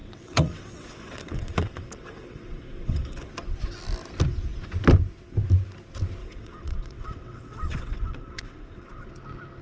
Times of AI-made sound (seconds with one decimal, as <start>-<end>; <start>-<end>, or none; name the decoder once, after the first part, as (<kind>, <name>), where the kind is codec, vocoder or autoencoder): 0.0-3.3 (vocoder, WaveNeXt); 6.2-9.1